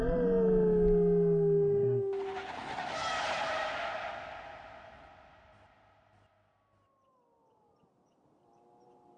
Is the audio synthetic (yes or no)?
no